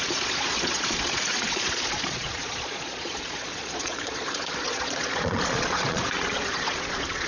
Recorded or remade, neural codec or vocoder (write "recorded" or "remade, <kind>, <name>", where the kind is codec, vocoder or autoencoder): remade, vocoder, Vocos